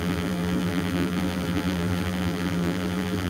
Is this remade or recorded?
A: remade